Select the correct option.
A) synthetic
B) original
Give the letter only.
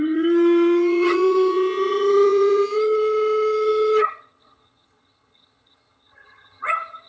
A